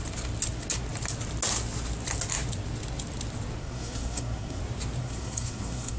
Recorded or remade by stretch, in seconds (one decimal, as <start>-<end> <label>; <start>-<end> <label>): 0.0-3.6 recorded; 3.6-4.6 remade; 4.6-5.0 recorded; 5.0-6.0 remade